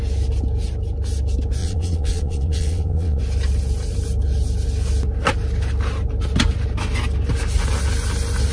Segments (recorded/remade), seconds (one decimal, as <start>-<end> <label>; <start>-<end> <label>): 0.0-1.6 recorded; 1.6-3.2 remade; 3.2-8.5 recorded